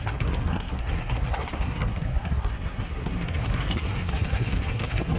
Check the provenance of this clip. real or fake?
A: fake